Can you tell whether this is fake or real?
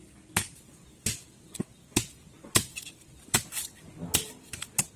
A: real